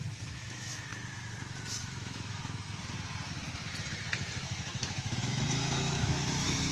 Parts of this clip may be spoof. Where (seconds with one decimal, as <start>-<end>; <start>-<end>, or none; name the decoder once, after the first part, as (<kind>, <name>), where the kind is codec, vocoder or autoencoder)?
0.0-0.9 (autoencoder, DAC-VAE); 1.8-2.4; 4.4-6.7